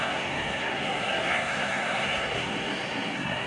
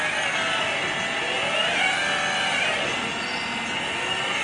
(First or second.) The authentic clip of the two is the second